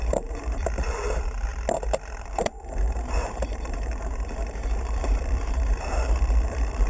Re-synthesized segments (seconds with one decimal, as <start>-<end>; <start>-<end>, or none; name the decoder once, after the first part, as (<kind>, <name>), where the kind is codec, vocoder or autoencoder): 0.0-1.5 (vocoder, BigVGAN v2); 2.2-6.9

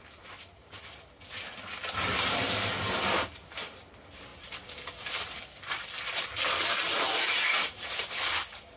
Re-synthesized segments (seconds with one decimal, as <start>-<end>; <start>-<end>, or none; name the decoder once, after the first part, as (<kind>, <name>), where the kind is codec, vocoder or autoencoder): none